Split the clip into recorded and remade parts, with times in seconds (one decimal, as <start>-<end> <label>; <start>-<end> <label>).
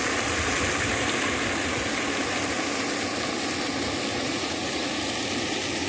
0.0-4.1 recorded; 4.1-4.9 remade; 4.9-5.9 recorded